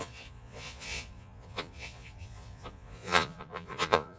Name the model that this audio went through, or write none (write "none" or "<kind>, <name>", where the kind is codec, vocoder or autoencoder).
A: vocoder, Vocos